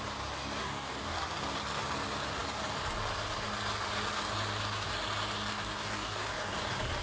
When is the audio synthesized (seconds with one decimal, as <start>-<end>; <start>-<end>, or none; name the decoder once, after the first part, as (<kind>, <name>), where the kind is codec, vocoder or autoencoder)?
0.6-1.2 (codec, DAC); 5.5-6.5